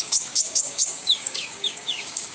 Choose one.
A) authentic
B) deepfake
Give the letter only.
B